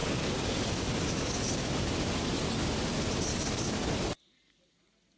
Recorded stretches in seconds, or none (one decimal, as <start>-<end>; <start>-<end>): 1.9-3.3; 3.9-5.2